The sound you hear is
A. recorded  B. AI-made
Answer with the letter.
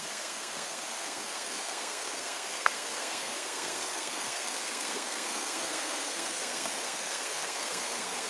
B